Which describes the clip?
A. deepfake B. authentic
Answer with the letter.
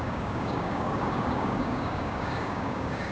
A